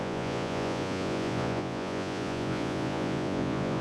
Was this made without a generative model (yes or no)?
no